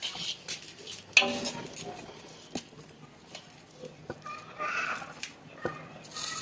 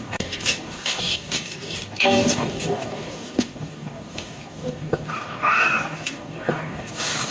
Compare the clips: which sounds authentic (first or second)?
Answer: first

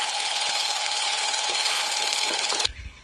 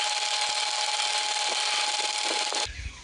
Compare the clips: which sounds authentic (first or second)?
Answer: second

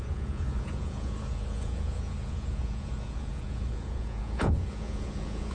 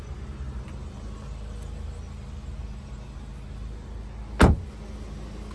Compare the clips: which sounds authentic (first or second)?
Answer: second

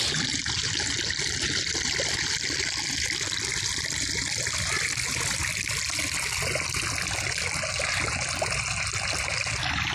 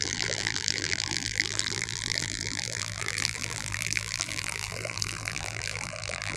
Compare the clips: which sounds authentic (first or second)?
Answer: first